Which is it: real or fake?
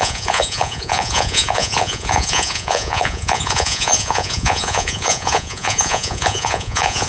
fake